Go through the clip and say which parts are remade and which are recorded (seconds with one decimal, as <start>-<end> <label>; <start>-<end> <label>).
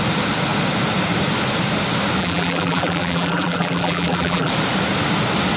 0.0-2.2 recorded; 2.2-4.5 remade; 4.5-5.6 recorded